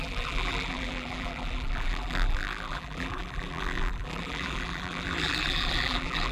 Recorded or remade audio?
remade